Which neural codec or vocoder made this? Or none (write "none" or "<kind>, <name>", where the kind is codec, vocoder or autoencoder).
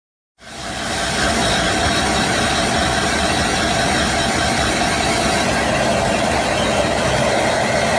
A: none